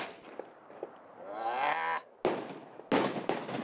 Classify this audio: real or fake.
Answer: real